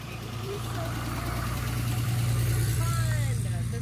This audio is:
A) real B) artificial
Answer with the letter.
B